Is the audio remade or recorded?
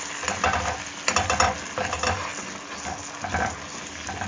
recorded